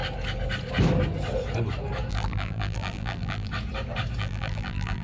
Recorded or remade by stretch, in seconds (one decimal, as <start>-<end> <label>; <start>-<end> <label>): 0.0-2.1 recorded; 2.1-3.5 remade; 3.5-4.2 recorded; 4.2-5.0 remade